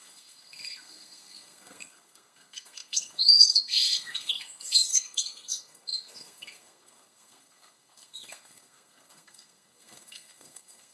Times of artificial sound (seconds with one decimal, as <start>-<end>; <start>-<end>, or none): 0.0-10.9